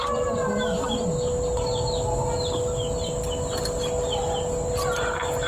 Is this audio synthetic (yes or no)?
no